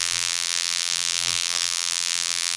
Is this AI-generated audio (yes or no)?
yes